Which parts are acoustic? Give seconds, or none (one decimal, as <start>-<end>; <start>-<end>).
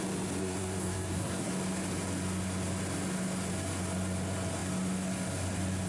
0.0-0.4; 1.5-5.9